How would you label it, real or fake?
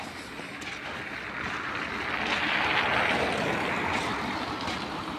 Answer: fake